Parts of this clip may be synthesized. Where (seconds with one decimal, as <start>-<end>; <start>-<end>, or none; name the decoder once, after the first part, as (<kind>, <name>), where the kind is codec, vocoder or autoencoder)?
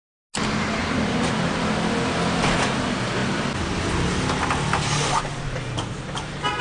0.8-1.5 (vocoder, BigVGAN v2)